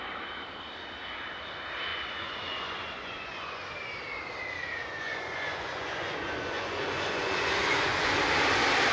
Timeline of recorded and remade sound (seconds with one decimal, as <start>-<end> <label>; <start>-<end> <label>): 0.0-1.9 recorded; 1.9-3.6 remade; 3.6-4.8 recorded; 4.8-8.2 remade; 8.2-8.9 recorded